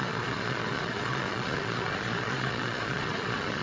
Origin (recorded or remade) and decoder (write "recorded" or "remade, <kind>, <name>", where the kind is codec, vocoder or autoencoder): remade, vocoder, Vocos